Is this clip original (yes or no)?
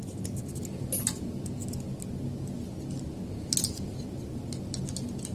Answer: yes